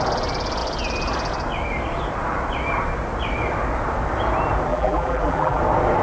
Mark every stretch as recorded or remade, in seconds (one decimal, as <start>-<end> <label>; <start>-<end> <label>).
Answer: 0.0-4.7 recorded; 4.7-5.6 remade; 5.6-6.0 recorded